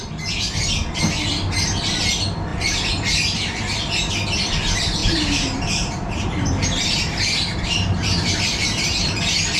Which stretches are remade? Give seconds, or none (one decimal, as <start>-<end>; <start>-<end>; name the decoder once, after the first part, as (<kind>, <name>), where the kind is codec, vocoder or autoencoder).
2.5-4.1 (vocoder, BigVGAN v2); 5.0-9.2